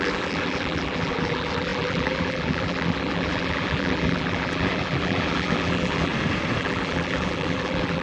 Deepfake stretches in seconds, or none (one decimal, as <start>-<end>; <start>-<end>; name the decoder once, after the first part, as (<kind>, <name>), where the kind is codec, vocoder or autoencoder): 0.0-6.1 (vocoder, BigVGAN v2); 6.6-8.0